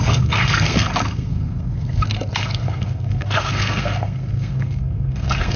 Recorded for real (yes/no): no